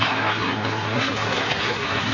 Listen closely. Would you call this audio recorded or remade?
remade